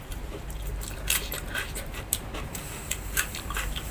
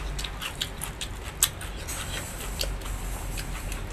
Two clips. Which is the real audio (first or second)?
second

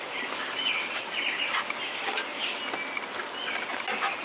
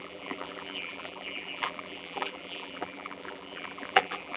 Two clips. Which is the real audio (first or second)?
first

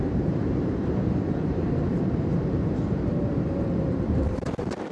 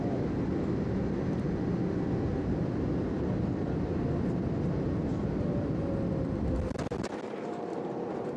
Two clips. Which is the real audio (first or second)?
second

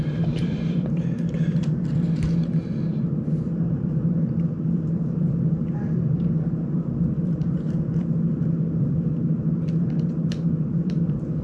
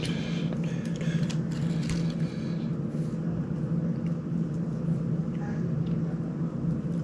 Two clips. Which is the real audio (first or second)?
second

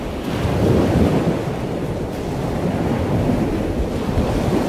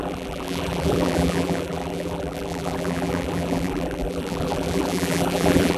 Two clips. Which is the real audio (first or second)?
first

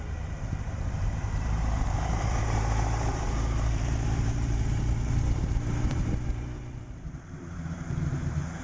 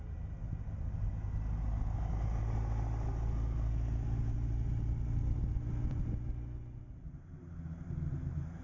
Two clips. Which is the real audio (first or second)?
second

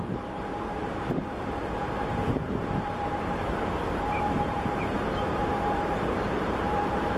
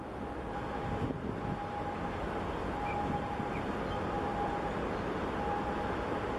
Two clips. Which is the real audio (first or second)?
second